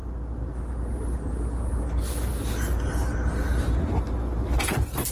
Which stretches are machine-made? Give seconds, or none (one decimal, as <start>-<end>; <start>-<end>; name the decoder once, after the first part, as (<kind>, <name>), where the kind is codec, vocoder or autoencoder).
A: none